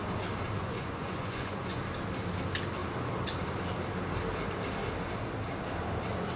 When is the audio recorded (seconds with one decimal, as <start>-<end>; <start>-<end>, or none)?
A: 0.0-0.6; 1.8-6.4